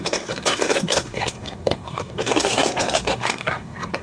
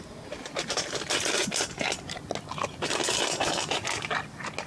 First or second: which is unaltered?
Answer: second